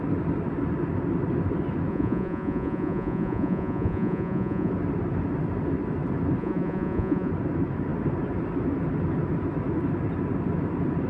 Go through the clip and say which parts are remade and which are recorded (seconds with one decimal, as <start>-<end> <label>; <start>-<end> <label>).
0.0-1.9 recorded; 1.9-4.7 remade; 4.7-6.4 recorded; 6.4-7.3 remade; 7.3-11.1 recorded

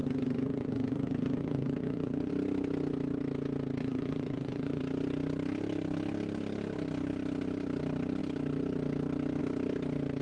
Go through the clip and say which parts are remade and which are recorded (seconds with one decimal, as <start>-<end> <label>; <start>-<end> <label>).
0.0-2.3 remade; 2.3-3.8 recorded; 3.8-4.8 remade; 4.8-10.2 recorded

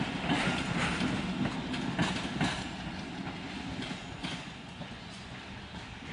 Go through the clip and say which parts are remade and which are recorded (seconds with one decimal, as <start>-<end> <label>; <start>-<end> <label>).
0.0-4.0 recorded; 4.0-5.4 remade; 5.4-6.1 recorded

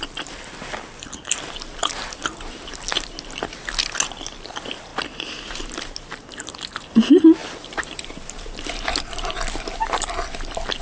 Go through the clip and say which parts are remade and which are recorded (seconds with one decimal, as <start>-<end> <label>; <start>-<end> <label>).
0.0-10.8 recorded